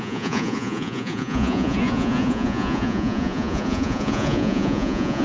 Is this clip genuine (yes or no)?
no